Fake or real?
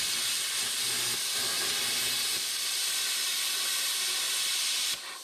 real